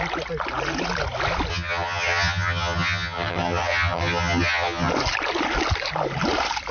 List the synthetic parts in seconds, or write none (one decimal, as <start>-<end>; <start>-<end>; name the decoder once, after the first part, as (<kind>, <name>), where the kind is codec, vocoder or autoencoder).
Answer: 1.5-4.9 (vocoder, HiFi-GAN)